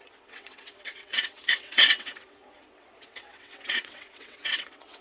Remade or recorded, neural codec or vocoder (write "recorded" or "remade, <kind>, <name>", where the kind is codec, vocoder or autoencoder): remade, vocoder, WaveNeXt